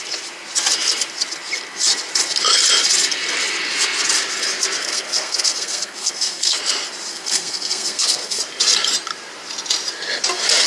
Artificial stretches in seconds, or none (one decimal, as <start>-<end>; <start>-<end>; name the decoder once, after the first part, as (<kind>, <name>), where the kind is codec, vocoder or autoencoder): 4.8-6.6 (codec, SNAC); 7.1-8.4